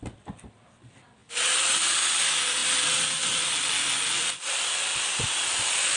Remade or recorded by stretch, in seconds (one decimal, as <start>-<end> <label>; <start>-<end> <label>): 0.0-6.0 recorded